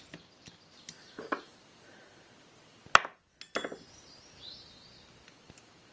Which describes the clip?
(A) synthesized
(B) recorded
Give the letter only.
B